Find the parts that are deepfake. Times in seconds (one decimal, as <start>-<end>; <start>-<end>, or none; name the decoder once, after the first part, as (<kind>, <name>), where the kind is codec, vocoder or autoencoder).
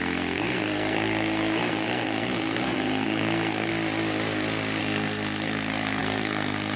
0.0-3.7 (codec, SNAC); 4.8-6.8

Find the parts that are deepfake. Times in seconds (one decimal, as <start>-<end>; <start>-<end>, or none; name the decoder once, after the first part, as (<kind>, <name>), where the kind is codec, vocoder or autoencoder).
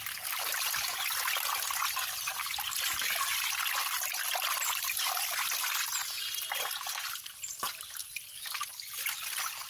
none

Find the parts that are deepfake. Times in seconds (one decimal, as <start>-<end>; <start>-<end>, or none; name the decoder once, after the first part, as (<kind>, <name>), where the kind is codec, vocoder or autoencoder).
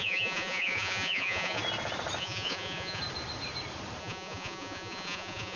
0.0-1.6 (vocoder, Vocos); 2.2-3.0; 4.0-5.6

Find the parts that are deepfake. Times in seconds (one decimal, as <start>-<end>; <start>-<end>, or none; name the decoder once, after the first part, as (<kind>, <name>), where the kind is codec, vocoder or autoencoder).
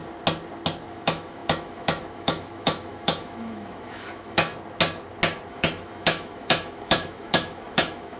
0.9-4.5 (autoencoder, DAC-VAE); 5.5-8.2